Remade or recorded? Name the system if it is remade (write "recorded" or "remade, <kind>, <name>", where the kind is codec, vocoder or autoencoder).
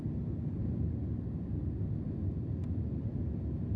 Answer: recorded